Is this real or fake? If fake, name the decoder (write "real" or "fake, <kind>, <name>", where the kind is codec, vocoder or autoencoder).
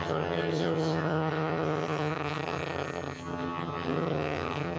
fake, vocoder, HiFi-GAN